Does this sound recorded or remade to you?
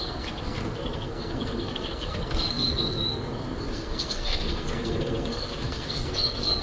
remade